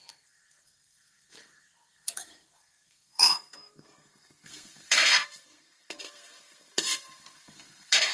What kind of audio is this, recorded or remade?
remade